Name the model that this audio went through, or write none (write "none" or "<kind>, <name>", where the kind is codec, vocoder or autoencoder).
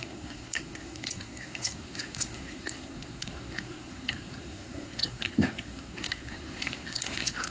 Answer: codec, SNAC